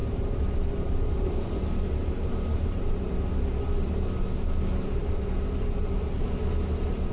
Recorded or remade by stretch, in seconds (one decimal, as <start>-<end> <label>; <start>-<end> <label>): 0.0-3.2 remade; 3.2-5.0 recorded; 5.0-6.2 remade; 6.2-7.1 recorded